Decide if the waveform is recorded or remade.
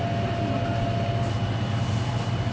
recorded